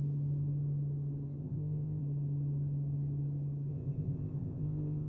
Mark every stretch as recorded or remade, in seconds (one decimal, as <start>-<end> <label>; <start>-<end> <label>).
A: 0.0-1.4 recorded; 1.4-2.0 remade; 2.0-3.7 recorded; 3.7-5.1 remade